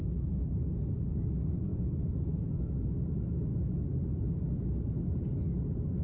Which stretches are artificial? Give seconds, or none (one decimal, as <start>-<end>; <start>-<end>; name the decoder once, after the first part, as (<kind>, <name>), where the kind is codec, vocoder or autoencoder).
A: none